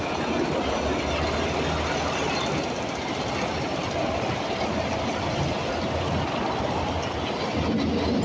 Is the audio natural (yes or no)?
yes